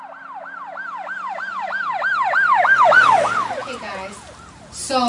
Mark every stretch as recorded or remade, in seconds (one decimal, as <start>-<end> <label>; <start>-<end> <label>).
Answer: 0.0-3.6 recorded; 3.6-4.3 remade; 4.3-5.1 recorded